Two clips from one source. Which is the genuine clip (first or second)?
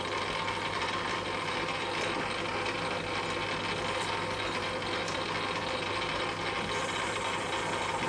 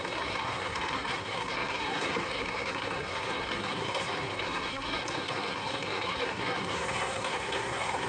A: first